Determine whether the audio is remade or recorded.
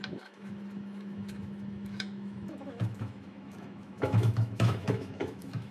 remade